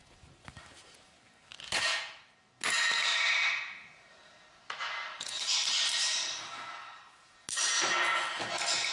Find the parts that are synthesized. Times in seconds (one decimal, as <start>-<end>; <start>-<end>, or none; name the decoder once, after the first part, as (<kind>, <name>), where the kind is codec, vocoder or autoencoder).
3.1-4.1 (vocoder, BigVGAN v2); 5.0-5.7